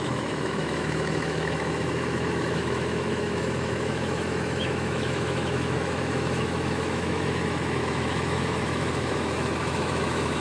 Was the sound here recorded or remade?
remade